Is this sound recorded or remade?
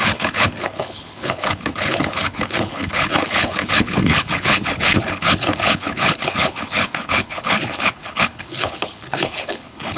remade